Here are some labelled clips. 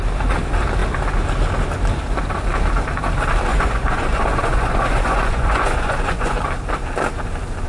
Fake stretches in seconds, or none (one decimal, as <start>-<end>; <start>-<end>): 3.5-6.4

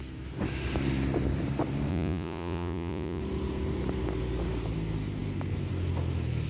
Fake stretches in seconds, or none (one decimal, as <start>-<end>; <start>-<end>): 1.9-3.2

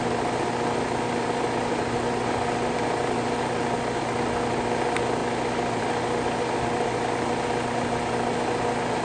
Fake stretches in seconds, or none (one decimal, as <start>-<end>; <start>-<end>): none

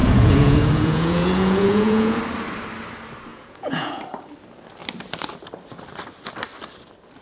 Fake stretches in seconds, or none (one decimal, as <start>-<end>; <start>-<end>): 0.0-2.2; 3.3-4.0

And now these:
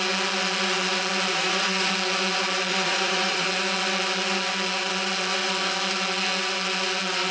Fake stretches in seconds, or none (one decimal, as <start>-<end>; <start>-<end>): 1.3-1.9; 2.7-3.5

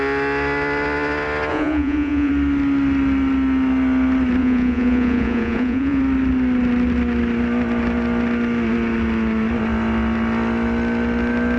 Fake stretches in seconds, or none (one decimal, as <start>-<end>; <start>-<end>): 1.5-2.3; 4.4-6.0